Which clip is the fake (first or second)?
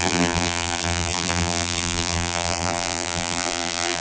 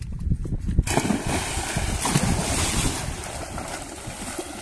first